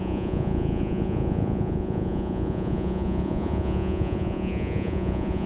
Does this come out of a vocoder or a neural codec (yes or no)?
yes